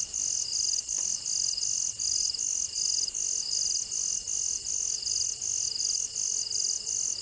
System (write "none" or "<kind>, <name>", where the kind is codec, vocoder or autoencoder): none